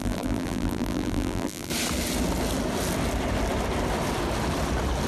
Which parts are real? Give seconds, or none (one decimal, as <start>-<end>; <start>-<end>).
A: 1.7-5.1